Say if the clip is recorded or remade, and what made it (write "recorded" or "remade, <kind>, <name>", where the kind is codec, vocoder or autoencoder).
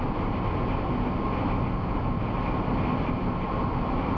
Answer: recorded